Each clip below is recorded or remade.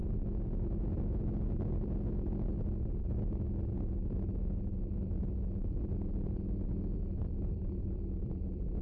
recorded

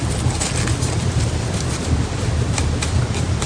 recorded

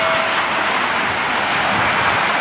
recorded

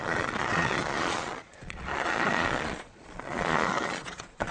remade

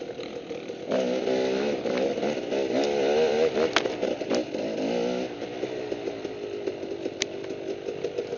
recorded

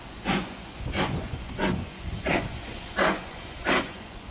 remade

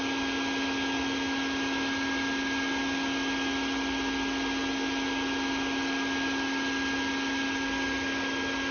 recorded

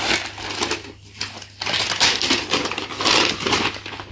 recorded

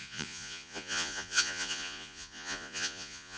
remade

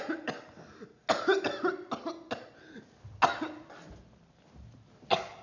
recorded